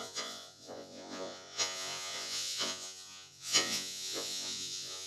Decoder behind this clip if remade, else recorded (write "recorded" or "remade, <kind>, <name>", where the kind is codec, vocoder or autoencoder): remade, vocoder, Vocos